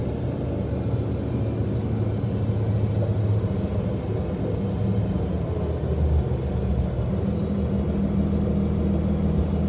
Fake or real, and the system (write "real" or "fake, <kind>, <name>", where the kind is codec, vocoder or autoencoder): real